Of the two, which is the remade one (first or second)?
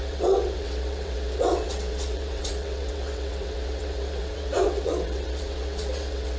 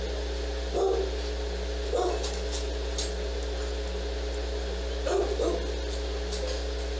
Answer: first